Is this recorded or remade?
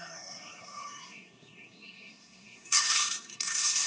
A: remade